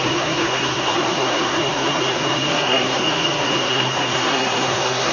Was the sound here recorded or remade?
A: remade